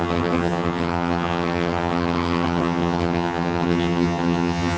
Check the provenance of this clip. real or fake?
fake